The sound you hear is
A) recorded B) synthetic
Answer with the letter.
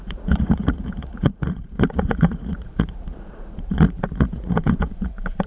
B